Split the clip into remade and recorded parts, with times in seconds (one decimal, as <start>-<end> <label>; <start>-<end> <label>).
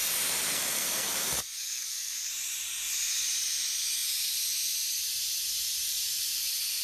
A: 0.0-0.5 recorded; 0.5-2.3 remade; 2.3-6.8 recorded